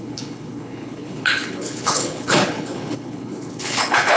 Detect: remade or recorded remade